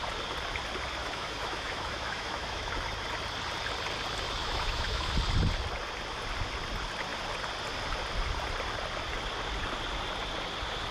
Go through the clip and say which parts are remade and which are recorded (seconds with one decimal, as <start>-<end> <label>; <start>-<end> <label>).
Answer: 0.0-1.0 recorded; 1.0-2.7 remade; 2.7-4.4 recorded; 4.4-5.1 remade; 5.1-10.9 recorded

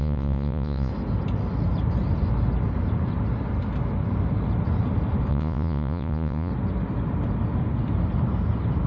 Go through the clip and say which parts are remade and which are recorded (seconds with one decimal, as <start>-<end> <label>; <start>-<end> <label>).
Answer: 0.0-0.9 remade; 0.9-5.3 recorded; 5.3-6.5 remade; 6.5-8.9 recorded